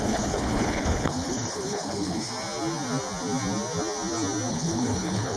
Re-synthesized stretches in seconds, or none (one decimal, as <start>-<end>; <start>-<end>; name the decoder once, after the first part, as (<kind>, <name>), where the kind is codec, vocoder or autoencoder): 0.0-2.3 (codec, HILCodec); 4.5-5.4